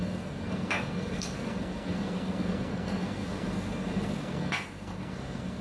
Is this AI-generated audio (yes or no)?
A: yes